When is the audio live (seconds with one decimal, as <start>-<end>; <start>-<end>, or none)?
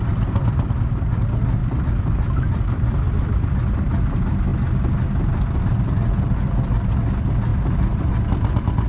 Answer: 0.0-8.9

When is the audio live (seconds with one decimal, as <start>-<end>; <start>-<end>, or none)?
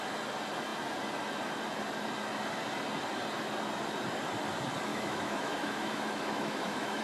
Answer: 0.0-4.9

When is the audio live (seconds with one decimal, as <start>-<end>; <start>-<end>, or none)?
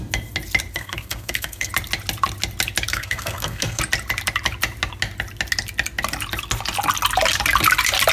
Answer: 0.0-0.7; 1.7-2.9; 3.8-8.1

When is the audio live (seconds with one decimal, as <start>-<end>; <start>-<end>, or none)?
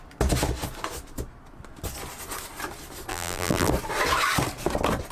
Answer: 0.0-3.1; 3.7-5.1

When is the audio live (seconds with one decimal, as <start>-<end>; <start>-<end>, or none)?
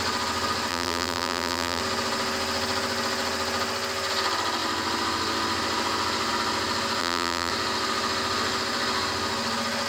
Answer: 0.0-0.7; 1.8-7.0; 7.5-9.9